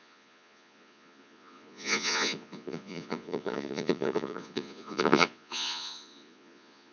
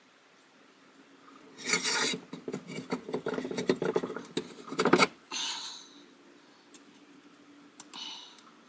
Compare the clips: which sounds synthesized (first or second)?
first